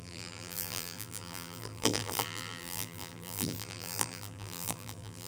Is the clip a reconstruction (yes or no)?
yes